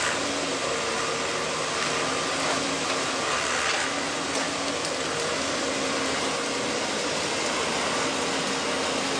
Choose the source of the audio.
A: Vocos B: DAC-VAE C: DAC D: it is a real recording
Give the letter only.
D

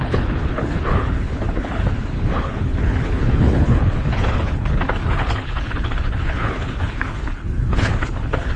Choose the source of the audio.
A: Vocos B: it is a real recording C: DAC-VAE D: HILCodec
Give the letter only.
D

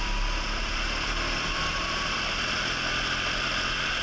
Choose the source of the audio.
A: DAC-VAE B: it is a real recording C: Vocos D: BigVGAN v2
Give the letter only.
D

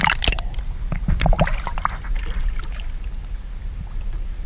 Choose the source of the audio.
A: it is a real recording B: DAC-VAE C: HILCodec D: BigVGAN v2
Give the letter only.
A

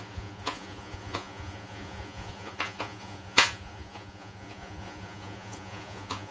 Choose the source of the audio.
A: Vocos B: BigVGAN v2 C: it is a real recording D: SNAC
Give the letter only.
A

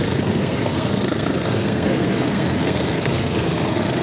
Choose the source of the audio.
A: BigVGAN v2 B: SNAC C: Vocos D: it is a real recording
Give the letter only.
B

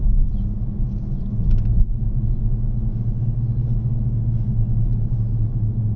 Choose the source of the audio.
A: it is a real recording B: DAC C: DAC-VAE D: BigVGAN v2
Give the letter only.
A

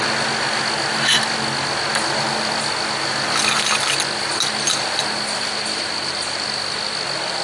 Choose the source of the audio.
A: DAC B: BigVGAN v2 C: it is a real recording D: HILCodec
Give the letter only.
C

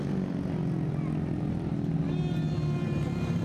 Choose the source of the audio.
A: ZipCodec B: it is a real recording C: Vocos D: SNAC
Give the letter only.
B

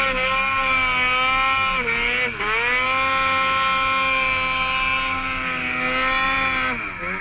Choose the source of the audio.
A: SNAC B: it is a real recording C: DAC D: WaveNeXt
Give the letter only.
B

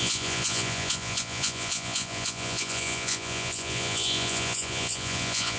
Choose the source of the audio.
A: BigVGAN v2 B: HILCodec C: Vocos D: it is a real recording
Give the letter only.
C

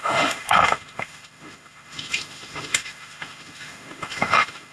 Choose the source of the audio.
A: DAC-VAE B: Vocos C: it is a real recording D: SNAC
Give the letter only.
A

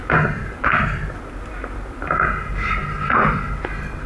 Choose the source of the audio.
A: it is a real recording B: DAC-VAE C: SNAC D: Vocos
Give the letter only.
A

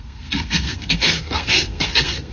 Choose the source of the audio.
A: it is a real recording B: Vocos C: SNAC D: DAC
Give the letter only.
C